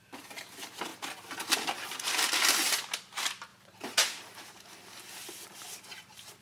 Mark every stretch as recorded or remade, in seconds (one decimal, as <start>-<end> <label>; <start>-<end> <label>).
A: 0.0-0.9 remade; 0.9-1.5 recorded; 1.5-6.4 remade